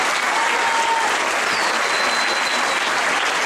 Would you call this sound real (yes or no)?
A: yes